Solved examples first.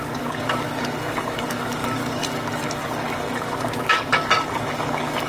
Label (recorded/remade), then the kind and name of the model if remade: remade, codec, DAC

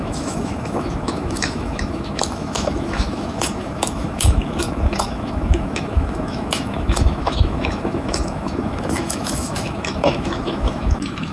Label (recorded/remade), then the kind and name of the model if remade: remade, autoencoder, DAC-VAE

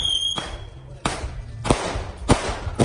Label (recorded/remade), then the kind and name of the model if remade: recorded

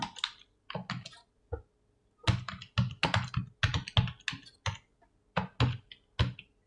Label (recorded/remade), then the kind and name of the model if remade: recorded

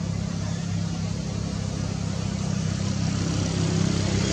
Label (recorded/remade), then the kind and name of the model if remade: recorded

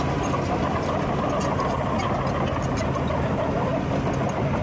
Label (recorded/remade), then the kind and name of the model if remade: recorded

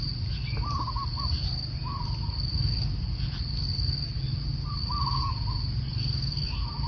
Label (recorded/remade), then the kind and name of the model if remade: recorded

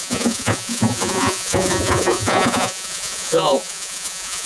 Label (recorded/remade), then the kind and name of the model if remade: remade, vocoder, Vocos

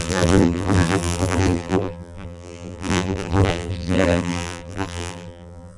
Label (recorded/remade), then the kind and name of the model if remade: remade, vocoder, BigVGAN v2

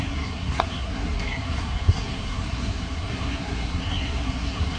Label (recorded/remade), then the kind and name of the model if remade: remade, codec, SNAC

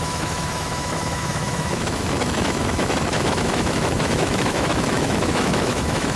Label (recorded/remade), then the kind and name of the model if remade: remade, autoencoder, DAC-VAE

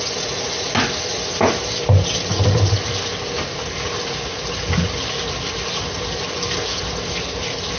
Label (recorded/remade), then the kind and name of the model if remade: recorded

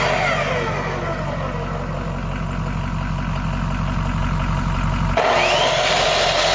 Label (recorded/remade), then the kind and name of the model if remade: recorded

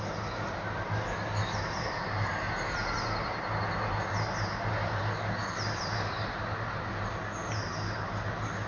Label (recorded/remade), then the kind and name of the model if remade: recorded